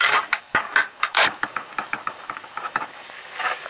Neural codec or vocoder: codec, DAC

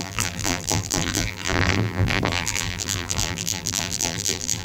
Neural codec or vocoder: vocoder, BigVGAN v2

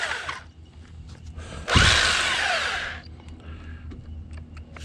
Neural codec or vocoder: none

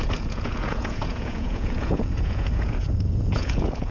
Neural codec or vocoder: vocoder, Vocos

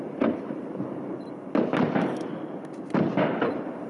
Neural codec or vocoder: none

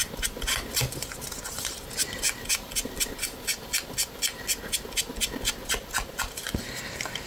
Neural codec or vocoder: none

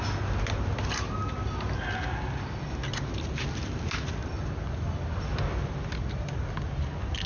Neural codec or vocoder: none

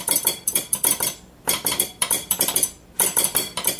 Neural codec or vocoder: vocoder, BigVGAN v2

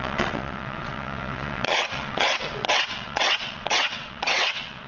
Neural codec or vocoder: vocoder, WaveNeXt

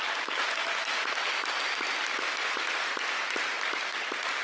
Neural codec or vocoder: none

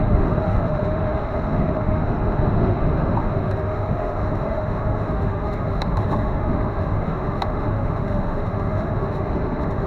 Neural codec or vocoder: autoencoder, DAC-VAE